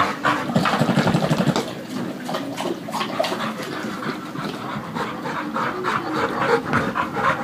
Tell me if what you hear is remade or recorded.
recorded